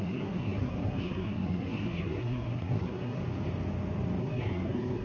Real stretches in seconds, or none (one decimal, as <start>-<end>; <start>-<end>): 3.2-4.2

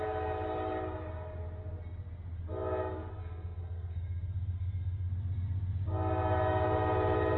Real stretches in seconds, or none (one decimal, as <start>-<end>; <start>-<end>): 0.0-3.1; 5.1-7.4